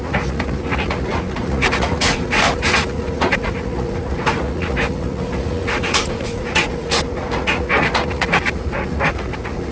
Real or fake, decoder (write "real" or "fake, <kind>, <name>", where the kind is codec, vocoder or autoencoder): fake, vocoder, Vocos